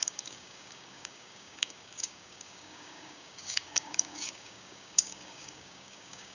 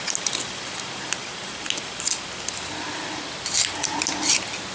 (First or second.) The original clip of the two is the second